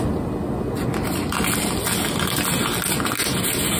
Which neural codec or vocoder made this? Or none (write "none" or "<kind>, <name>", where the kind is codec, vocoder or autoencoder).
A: none